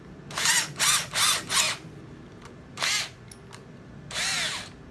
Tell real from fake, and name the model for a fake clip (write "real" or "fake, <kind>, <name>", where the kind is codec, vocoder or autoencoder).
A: real